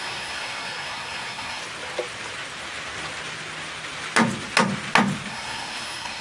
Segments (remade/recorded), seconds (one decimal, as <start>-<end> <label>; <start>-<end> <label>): 0.0-1.6 remade; 1.6-5.3 recorded; 5.3-6.2 remade